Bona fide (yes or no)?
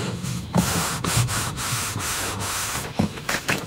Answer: no